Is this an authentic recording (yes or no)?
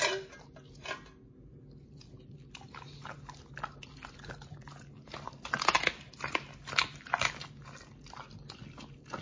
yes